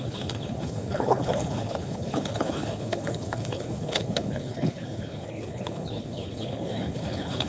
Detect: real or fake fake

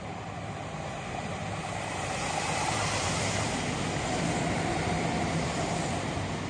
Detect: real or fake real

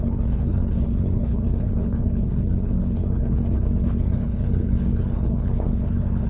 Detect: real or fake fake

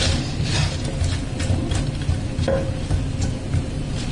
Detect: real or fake real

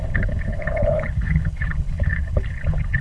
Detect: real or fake fake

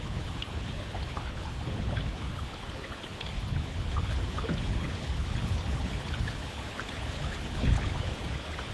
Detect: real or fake fake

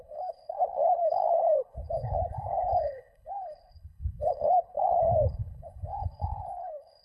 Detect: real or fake fake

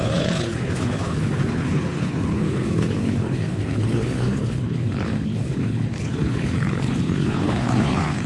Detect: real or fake fake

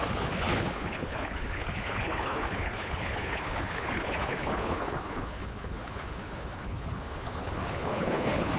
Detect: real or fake fake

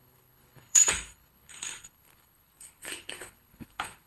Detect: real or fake fake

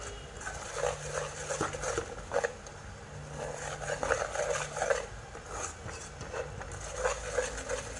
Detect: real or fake real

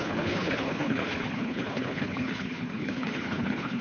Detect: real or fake fake